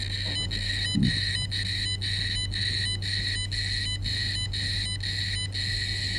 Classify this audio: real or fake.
real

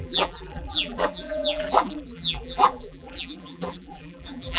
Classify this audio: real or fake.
fake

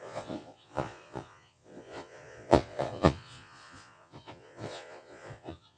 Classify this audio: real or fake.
fake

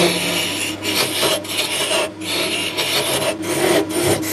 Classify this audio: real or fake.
real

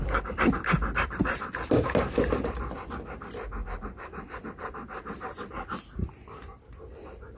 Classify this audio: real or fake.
real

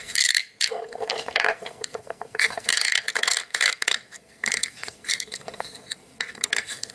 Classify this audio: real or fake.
fake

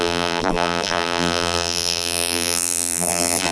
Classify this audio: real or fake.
fake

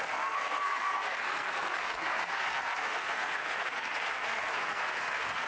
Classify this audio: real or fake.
fake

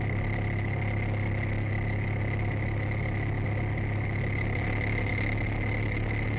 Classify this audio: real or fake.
real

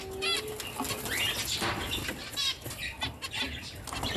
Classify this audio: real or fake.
real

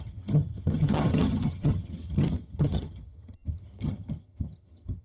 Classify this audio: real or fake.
fake